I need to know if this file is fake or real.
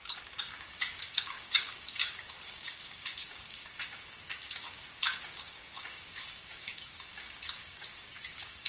fake